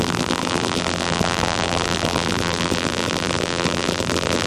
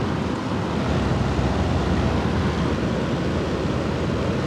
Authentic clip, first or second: second